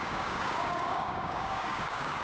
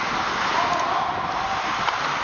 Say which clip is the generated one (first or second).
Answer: first